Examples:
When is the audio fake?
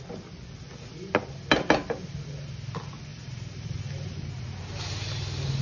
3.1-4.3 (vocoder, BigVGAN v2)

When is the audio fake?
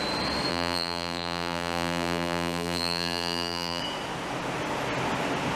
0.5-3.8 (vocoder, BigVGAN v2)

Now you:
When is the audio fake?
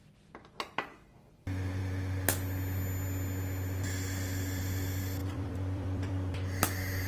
5.2-6.3 (vocoder, BigVGAN v2)